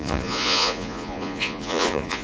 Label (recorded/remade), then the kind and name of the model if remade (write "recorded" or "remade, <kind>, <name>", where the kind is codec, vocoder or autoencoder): remade, vocoder, Vocos